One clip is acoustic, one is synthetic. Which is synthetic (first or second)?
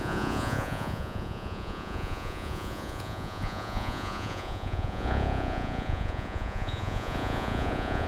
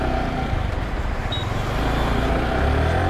first